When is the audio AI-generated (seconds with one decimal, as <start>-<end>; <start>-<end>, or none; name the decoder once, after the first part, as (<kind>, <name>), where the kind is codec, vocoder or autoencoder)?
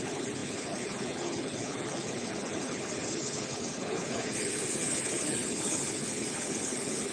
0.0-7.1 (codec, HILCodec)